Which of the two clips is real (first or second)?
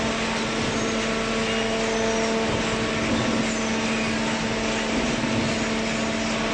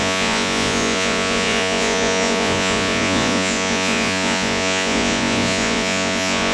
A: first